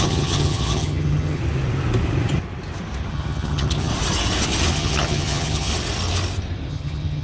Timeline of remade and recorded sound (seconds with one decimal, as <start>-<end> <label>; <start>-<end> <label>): 0.0-1.4 remade; 1.4-3.1 recorded; 3.1-3.9 remade; 3.9-4.7 recorded; 4.7-5.7 remade; 5.7-6.7 recorded; 6.7-7.2 remade